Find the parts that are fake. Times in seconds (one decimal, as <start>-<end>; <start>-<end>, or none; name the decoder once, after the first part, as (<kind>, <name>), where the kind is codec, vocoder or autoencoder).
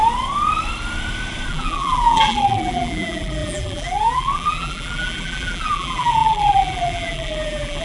1.5-7.8 (vocoder, BigVGAN v2)